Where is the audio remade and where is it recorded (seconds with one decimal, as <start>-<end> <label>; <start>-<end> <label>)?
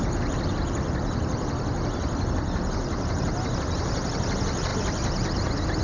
0.0-5.8 recorded